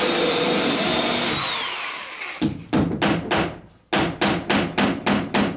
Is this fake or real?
real